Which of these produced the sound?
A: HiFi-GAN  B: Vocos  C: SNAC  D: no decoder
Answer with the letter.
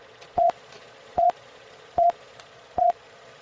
B